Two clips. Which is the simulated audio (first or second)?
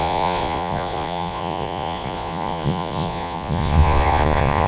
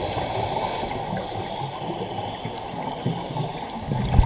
first